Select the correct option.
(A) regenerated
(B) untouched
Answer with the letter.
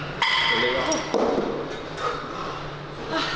B